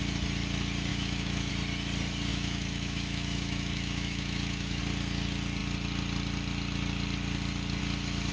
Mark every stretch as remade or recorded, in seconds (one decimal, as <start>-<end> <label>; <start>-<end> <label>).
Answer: 0.0-0.9 recorded; 0.9-1.5 remade; 1.5-2.3 recorded; 2.3-4.8 remade; 4.8-8.3 recorded